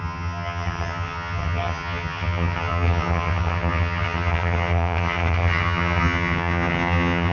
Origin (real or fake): fake